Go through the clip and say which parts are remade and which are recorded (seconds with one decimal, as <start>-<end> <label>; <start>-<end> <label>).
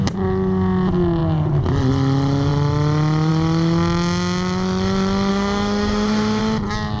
0.0-5.3 recorded; 5.3-6.4 remade; 6.4-7.0 recorded